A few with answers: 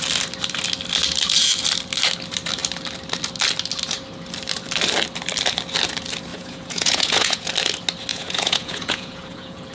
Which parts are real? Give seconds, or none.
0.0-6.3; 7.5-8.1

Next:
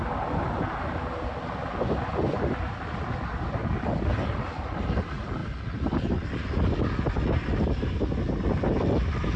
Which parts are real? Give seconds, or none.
0.0-9.4